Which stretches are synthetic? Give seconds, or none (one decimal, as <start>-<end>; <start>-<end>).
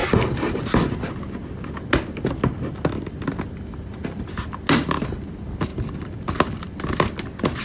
none